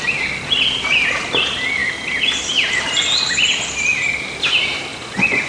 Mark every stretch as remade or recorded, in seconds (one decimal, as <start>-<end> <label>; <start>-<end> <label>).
0.0-4.9 recorded; 4.9-5.5 remade